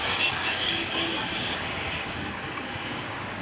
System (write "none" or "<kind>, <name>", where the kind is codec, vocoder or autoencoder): codec, DAC